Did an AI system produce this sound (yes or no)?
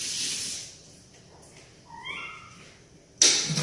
no